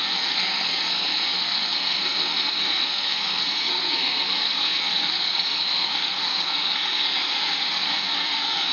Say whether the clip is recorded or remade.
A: remade